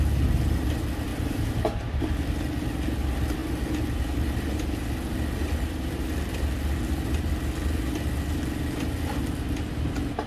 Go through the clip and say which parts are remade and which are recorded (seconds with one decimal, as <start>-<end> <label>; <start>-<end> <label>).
0.0-1.1 recorded; 1.1-2.1 remade; 2.1-10.3 recorded